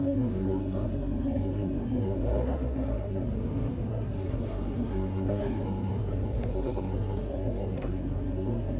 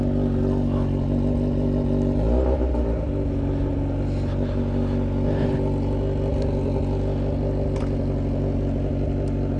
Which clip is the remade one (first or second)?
first